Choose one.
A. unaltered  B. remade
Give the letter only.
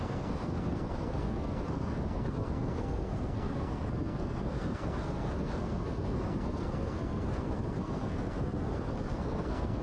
B